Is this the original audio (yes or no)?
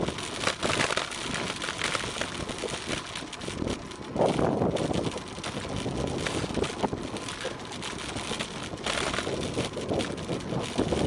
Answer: yes